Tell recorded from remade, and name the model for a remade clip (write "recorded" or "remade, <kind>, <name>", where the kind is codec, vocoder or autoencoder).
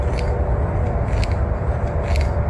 recorded